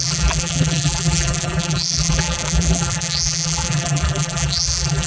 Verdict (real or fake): fake